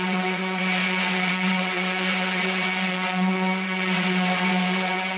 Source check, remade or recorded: remade